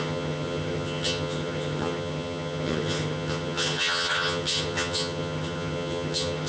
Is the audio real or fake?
fake